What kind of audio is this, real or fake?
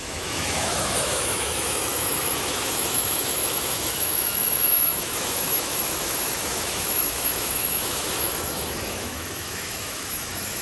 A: fake